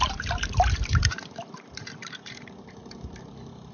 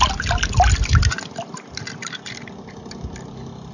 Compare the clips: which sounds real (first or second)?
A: second